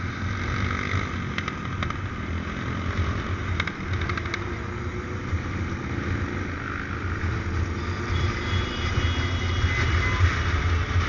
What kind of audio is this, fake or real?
real